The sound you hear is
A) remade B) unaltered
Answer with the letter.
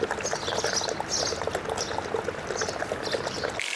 B